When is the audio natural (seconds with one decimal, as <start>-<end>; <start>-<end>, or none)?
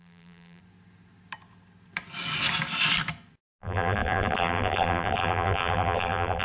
0.6-3.6